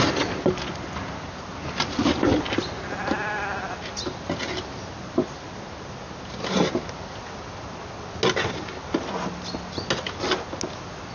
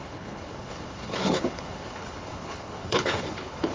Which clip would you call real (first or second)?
first